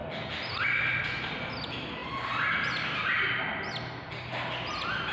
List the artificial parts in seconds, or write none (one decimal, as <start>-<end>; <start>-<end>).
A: none